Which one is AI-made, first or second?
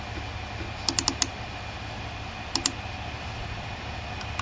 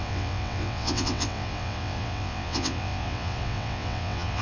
second